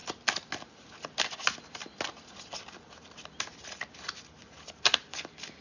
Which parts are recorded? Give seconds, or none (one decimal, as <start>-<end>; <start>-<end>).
0.0-5.6